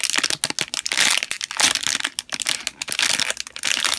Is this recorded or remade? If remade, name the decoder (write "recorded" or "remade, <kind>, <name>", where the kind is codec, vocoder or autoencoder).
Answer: recorded